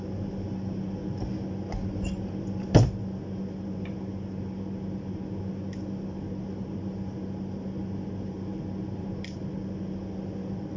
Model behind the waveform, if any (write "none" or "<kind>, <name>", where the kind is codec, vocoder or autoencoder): none